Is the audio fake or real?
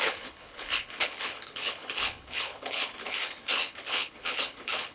fake